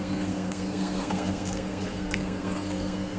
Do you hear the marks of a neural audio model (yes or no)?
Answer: yes